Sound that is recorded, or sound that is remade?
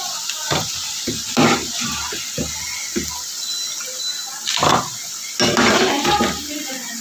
recorded